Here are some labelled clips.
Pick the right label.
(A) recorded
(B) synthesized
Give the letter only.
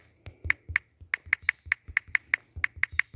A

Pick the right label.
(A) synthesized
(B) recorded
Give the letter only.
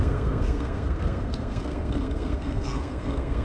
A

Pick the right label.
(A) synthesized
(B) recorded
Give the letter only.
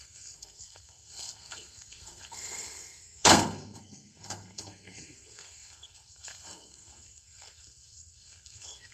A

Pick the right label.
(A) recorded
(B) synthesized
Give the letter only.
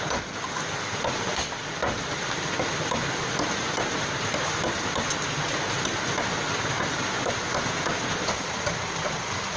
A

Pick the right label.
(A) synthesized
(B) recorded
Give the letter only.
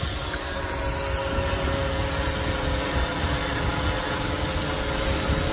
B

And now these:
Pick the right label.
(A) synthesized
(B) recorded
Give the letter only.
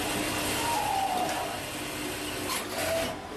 B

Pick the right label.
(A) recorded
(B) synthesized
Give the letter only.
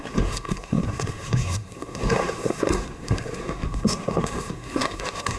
B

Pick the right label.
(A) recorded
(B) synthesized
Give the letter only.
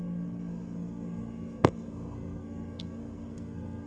B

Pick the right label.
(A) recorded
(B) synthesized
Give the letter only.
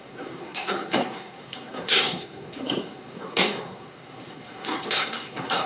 B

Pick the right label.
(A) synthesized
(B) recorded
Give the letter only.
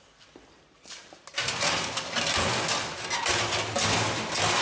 B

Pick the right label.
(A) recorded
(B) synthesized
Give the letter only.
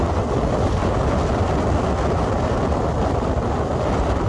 A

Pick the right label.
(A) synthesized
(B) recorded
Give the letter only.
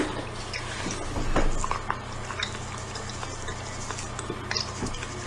B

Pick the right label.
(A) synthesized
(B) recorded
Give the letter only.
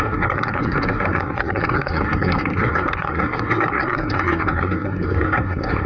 A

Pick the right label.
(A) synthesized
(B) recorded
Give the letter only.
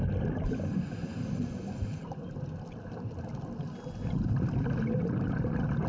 B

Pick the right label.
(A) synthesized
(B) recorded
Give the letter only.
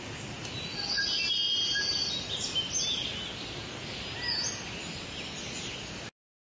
B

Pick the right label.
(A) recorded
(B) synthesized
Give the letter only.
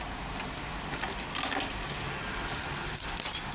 A